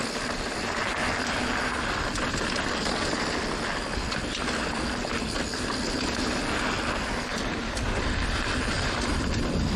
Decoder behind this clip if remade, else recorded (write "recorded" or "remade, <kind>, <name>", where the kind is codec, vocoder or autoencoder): recorded